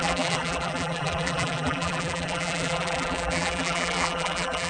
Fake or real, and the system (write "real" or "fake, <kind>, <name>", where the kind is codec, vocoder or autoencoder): fake, vocoder, BigVGAN v2